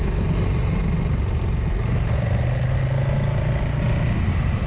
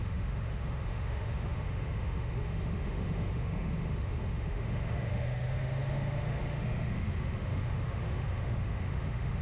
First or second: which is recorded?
first